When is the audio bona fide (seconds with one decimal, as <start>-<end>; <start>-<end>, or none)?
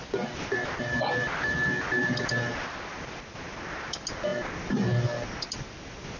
0.0-6.2